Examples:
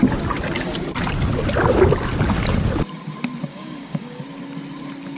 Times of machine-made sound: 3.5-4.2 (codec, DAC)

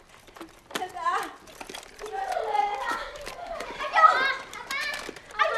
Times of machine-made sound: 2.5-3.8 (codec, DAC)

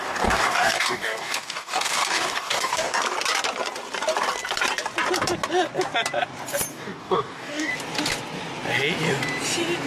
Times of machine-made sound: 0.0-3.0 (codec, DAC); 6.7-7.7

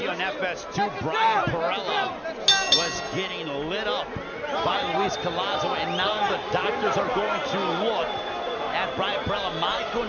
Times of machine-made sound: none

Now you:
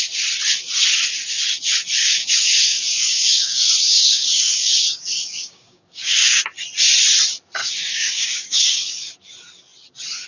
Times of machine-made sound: 2.0-6.4 (codec, DAC); 7.6-9.1

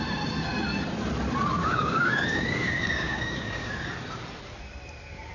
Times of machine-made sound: 1.6-3.7 (codec, DAC)